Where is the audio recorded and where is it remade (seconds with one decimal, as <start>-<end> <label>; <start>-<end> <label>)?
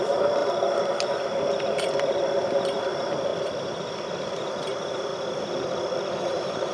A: 0.0-3.3 remade; 3.3-4.4 recorded; 4.4-5.1 remade; 5.1-6.2 recorded; 6.2-6.7 remade